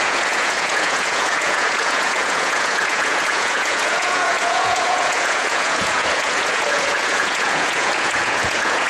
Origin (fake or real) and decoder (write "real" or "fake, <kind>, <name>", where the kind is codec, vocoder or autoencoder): fake, vocoder, Vocos